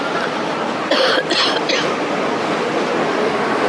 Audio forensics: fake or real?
real